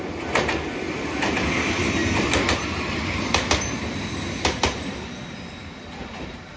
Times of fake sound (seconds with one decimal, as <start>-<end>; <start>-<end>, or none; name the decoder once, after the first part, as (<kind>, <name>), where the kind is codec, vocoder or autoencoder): none